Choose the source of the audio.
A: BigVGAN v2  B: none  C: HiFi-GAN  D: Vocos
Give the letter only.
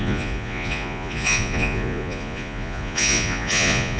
D